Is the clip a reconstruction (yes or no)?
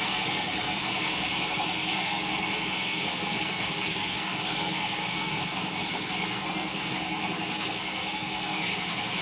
yes